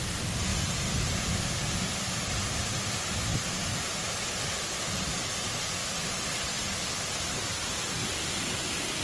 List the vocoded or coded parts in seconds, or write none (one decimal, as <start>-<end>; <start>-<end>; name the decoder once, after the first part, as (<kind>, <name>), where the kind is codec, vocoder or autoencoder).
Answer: none